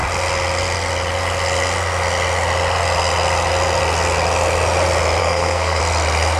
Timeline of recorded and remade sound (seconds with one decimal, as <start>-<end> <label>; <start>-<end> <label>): 0.0-5.2 recorded; 5.2-5.8 remade; 5.8-6.4 recorded